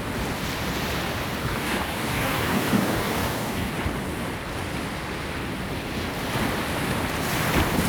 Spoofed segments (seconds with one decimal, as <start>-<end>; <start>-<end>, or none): 1.4-3.7